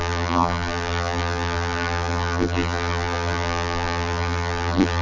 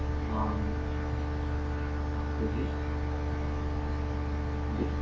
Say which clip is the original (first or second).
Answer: second